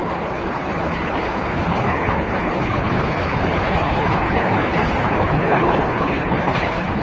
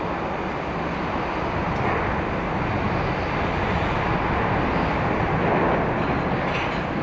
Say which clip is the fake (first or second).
first